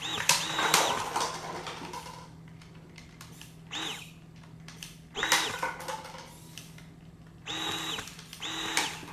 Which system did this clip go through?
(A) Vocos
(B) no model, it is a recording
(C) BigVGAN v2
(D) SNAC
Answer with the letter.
C